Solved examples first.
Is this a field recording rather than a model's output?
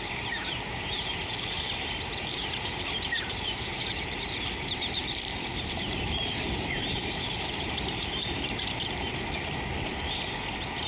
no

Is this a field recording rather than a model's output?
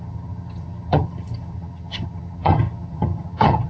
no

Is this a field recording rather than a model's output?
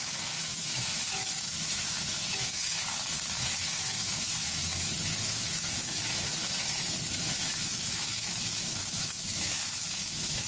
no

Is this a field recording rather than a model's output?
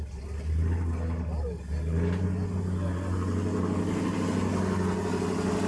yes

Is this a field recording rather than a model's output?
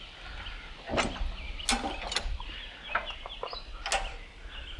yes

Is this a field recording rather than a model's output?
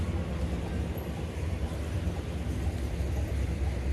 yes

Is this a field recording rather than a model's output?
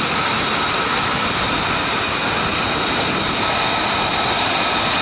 yes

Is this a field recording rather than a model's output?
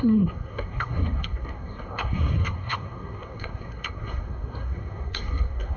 no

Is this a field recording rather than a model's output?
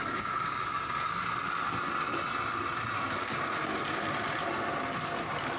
yes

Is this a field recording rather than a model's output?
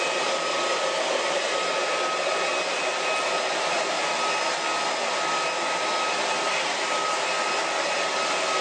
yes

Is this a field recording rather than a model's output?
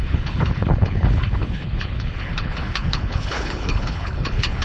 no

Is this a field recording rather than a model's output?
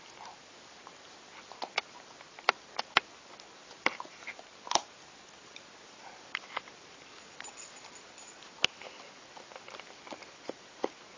yes